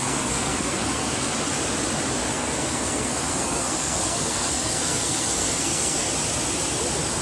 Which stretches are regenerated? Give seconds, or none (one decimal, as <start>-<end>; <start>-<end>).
0.0-1.3; 2.3-6.1